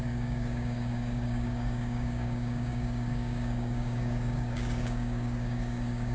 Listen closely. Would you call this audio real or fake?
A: fake